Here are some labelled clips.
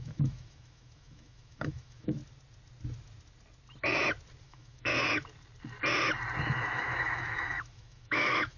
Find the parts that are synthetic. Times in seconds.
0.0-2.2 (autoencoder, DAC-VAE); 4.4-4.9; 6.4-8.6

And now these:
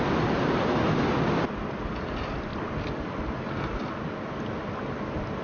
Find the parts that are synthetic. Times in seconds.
none